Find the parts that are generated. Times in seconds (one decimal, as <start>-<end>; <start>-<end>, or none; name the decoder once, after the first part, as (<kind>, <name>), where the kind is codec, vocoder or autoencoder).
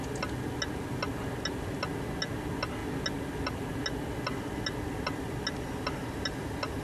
none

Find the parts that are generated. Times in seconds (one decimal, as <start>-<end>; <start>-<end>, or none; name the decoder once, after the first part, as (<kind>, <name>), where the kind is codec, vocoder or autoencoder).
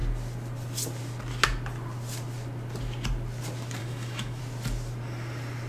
3.8-4.4 (autoencoder, DAC-VAE)